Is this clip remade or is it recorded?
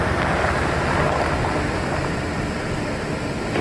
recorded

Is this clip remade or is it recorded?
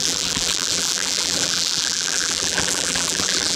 remade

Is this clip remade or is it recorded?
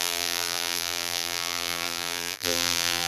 remade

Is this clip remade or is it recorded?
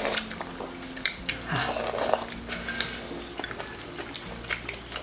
remade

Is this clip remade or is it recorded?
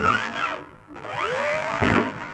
remade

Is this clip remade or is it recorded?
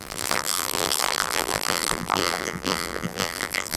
remade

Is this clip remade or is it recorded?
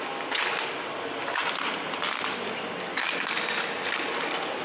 recorded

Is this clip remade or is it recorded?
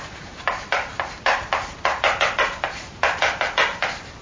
remade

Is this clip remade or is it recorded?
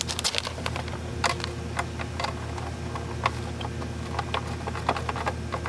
recorded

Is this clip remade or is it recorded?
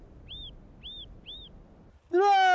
recorded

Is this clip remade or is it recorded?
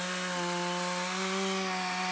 recorded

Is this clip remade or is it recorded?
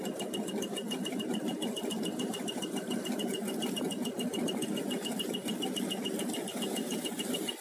recorded